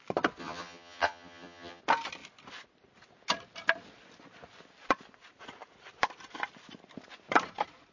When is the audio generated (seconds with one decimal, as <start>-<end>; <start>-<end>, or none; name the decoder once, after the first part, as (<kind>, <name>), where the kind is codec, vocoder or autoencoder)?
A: 0.4-1.8 (vocoder, HiFi-GAN)